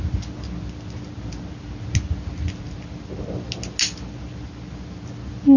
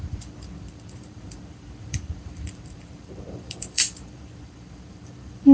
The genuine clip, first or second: first